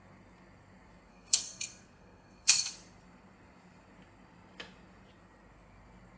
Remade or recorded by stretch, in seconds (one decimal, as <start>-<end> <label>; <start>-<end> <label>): 0.0-1.1 recorded; 1.1-2.7 remade; 2.7-6.2 recorded